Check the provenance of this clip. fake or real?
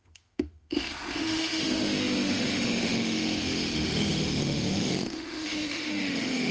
fake